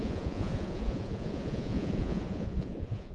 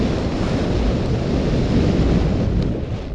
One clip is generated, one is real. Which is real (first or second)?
second